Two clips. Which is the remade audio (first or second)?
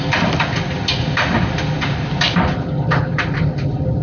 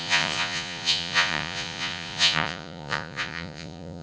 second